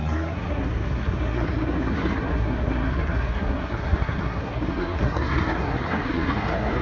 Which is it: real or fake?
fake